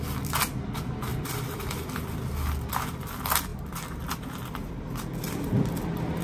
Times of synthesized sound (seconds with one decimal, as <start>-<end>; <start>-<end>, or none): none